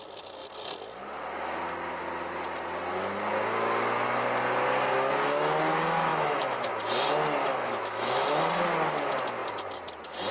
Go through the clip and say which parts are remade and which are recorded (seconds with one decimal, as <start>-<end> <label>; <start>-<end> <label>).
0.0-6.1 recorded; 6.1-6.7 remade; 6.7-7.4 recorded; 7.4-8.4 remade; 8.4-10.3 recorded